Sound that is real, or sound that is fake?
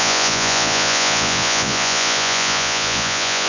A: fake